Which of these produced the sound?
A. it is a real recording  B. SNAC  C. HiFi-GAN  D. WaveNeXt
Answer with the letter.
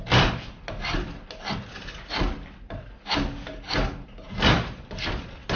A